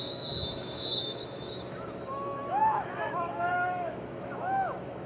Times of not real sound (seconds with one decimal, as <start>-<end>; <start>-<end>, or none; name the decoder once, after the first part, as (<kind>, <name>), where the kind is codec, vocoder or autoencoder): 0.0-5.1 (autoencoder, DAC-VAE)